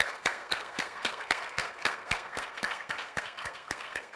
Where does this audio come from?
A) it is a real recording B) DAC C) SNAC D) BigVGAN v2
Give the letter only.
C